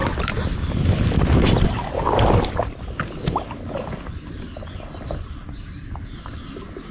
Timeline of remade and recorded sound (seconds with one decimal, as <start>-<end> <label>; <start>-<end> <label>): 0.0-6.9 recorded